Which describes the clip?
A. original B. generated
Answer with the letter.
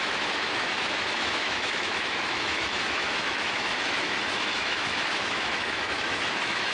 B